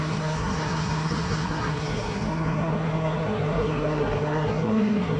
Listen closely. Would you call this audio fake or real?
fake